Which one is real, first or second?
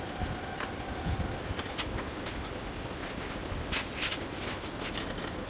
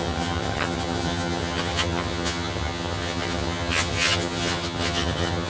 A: first